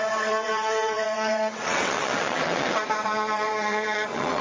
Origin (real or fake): fake